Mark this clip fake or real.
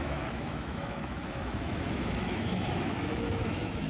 fake